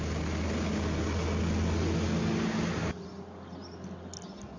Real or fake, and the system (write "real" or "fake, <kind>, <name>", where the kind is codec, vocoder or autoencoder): real